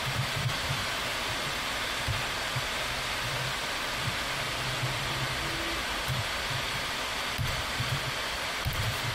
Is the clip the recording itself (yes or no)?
no